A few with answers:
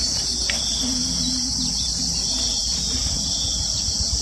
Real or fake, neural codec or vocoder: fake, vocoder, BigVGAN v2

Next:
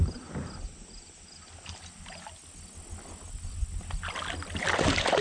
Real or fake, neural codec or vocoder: real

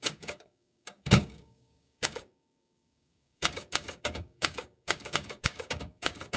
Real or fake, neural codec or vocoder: fake, codec, DAC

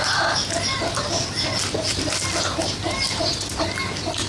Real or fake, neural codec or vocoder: real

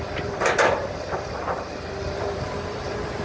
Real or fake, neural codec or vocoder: fake, vocoder, BigVGAN v2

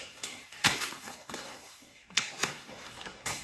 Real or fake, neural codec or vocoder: fake, codec, SNAC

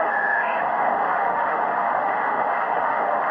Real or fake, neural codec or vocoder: fake, autoencoder, DAC-VAE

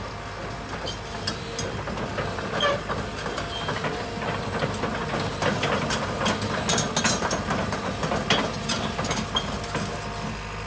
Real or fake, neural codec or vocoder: real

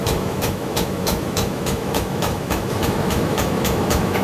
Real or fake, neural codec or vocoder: fake, autoencoder, DAC-VAE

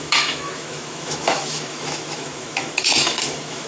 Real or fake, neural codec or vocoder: fake, autoencoder, DAC-VAE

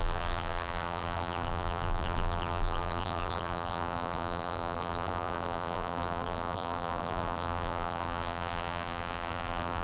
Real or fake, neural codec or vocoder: fake, vocoder, BigVGAN v2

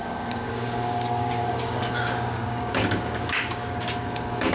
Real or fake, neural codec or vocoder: fake, codec, DAC